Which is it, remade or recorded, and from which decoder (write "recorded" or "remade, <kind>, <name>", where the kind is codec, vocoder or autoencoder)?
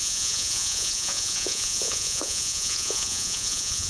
remade, vocoder, Vocos